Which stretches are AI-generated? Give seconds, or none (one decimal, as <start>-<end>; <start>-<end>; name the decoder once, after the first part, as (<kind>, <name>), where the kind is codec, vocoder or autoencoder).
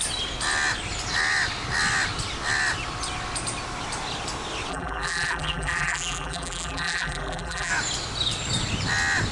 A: 4.7-7.7 (vocoder, BigVGAN v2)